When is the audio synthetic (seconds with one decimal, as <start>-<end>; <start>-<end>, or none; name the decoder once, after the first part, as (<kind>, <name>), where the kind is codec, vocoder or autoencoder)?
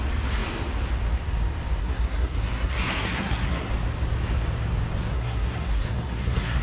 1.8-3.7 (codec, SNAC); 5.0-6.6